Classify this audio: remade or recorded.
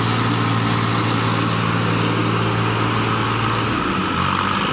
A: recorded